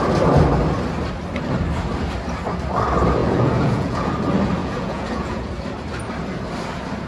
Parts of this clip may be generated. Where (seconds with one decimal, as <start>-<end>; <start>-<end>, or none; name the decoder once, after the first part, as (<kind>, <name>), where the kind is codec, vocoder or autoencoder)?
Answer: 3.2-4.1 (vocoder, Vocos); 4.6-5.5